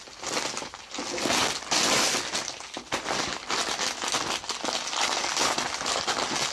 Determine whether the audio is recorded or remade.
recorded